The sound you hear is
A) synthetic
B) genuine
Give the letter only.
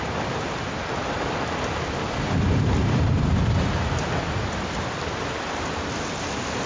A